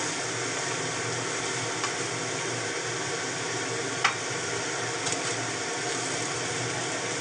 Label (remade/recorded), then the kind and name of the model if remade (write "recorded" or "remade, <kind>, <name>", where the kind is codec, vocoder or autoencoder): recorded